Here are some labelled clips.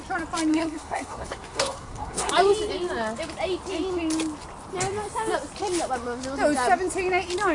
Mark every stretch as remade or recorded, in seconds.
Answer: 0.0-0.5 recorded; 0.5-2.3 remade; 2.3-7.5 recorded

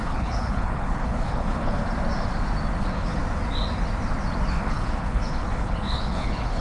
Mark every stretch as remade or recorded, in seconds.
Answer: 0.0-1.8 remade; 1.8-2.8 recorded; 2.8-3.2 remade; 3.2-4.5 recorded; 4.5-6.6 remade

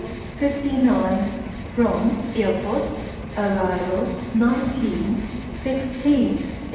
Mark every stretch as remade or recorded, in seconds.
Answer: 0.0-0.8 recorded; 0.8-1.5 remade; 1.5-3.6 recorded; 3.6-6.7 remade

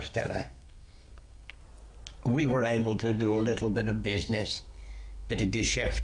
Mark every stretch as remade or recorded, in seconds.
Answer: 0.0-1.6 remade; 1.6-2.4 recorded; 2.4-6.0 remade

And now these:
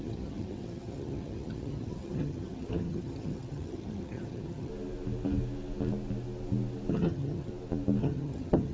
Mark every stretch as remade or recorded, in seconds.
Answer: 0.0-4.7 remade; 4.7-6.9 recorded; 6.9-7.5 remade; 7.5-8.0 recorded; 8.0-8.7 remade

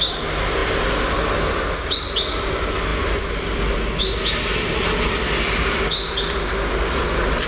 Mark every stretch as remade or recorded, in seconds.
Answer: 0.0-7.5 recorded

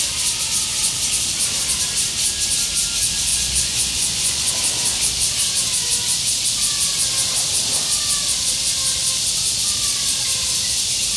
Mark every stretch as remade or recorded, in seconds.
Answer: 0.0-3.3 recorded; 3.3-4.5 remade; 4.5-11.2 recorded

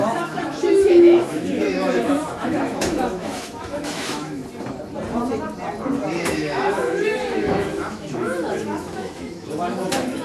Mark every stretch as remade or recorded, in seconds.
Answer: 0.0-4.4 remade; 4.4-6.1 recorded; 6.1-10.2 remade